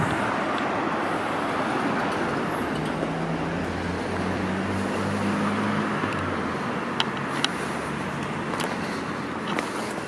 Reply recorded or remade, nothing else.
recorded